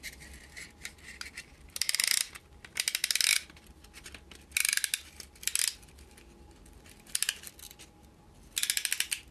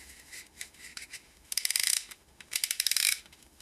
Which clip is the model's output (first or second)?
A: second